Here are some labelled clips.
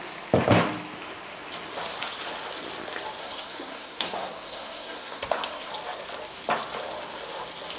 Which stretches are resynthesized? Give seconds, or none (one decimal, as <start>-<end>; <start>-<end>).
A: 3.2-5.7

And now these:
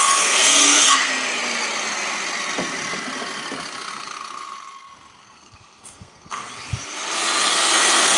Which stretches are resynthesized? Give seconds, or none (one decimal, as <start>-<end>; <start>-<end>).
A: 0.0-1.1; 5.2-6.4; 7.5-8.2

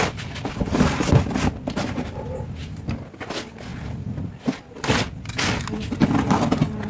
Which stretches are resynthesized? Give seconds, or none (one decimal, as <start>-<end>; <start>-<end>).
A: none

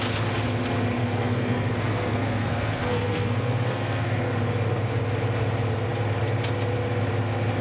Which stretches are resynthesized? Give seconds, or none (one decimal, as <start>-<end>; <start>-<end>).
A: 1.0-4.2

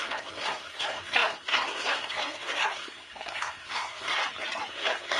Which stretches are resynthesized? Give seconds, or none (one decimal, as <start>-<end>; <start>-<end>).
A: 0.0-4.2; 4.7-5.2

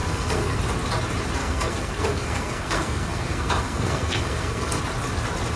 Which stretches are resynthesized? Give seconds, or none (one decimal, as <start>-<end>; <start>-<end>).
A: 0.0-0.6; 1.4-4.8